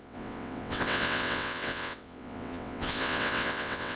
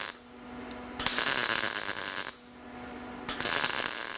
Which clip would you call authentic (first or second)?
second